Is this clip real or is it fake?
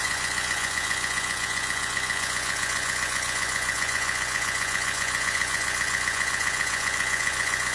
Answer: fake